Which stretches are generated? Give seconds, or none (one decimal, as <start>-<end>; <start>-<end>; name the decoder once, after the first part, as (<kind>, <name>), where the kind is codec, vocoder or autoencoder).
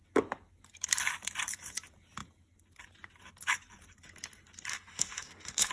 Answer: 4.7-5.7 (autoencoder, DAC-VAE)